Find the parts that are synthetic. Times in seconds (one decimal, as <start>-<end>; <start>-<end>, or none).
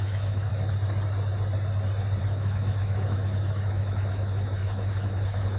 0.0-0.5; 2.2-5.6